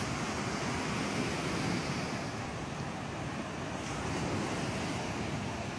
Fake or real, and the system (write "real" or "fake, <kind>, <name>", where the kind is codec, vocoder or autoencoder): real